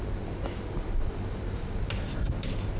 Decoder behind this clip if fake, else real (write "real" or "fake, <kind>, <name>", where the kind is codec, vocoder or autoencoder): real